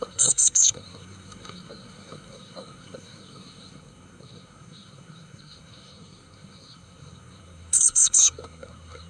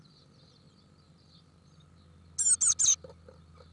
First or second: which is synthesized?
first